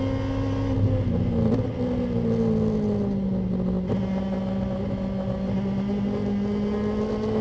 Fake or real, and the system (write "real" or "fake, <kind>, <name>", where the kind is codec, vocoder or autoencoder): real